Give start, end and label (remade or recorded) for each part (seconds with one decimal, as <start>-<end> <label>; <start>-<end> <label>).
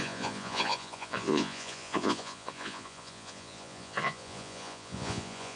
0.0-5.6 remade